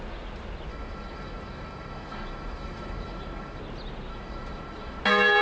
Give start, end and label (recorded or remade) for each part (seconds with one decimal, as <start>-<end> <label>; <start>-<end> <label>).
0.0-0.7 recorded; 0.7-3.6 remade; 3.6-4.1 recorded; 4.1-5.0 remade; 5.0-5.4 recorded

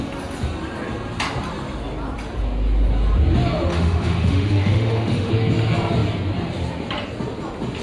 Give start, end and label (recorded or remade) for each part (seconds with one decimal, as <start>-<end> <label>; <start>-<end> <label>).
0.0-3.7 recorded; 3.7-5.3 remade; 5.3-7.8 recorded

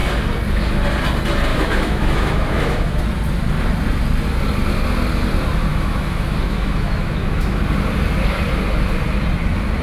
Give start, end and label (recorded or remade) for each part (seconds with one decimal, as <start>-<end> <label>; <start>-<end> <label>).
0.0-1.5 recorded; 1.5-3.0 remade; 3.0-5.7 recorded; 5.7-7.6 remade; 7.6-9.8 recorded

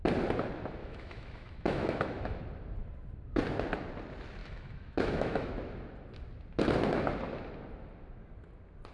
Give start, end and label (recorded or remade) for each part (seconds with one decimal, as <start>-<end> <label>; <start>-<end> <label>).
0.0-0.8 recorded; 0.8-2.4 remade; 2.4-4.4 recorded; 4.4-5.5 remade; 5.5-8.9 recorded

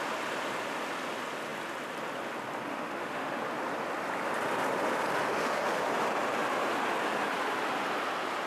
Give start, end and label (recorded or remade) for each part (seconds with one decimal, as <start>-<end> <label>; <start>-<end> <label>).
0.0-2.7 recorded; 2.7-3.4 remade; 3.4-5.3 recorded; 5.3-5.9 remade; 5.9-8.5 recorded

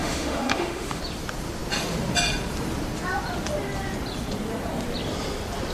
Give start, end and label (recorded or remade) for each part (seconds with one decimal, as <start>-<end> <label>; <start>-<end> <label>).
0.0-1.0 remade; 1.0-5.7 recorded

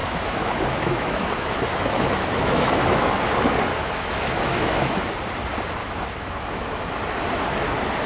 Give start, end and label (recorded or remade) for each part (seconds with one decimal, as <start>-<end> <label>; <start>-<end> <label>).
0.0-3.1 remade; 3.1-3.7 recorded; 3.7-5.1 remade; 5.1-5.8 recorded; 5.8-6.8 remade; 6.8-8.1 recorded